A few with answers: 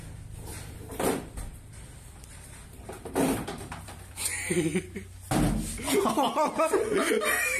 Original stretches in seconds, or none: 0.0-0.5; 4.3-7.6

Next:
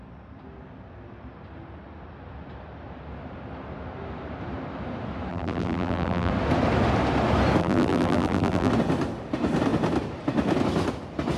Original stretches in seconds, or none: 0.0-5.3; 6.3-7.6; 8.7-11.4

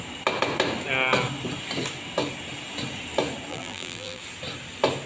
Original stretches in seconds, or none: 0.0-3.5; 4.2-5.1

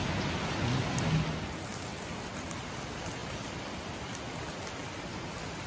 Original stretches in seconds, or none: 0.0-3.2; 4.0-5.7

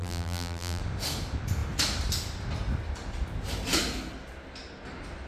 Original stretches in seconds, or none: 0.8-5.3

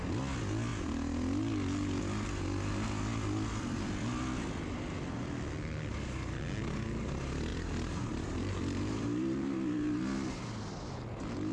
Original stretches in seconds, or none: 0.0-7.5; 10.0-11.5

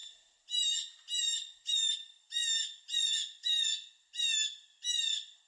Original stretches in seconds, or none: 0.0-5.5

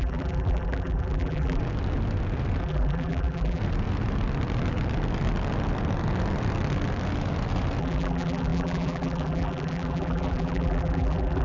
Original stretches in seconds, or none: 1.6-2.6; 3.6-7.8